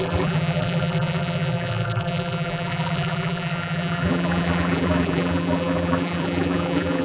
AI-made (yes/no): yes